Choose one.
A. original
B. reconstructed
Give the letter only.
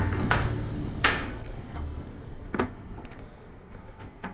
B